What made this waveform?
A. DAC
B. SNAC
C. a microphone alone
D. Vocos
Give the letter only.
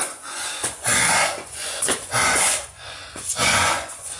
D